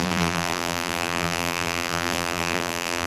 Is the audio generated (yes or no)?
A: yes